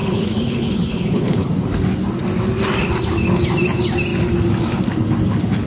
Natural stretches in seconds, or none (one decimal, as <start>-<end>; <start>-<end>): 1.5-5.7